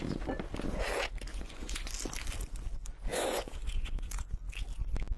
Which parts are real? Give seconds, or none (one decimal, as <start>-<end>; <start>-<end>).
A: 0.0-1.3; 1.9-3.1; 4.3-5.2